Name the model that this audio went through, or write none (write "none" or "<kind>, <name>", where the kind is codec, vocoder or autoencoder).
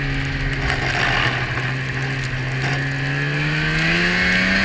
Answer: none